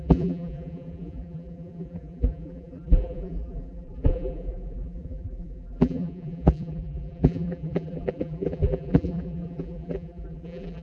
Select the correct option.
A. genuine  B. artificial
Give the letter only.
B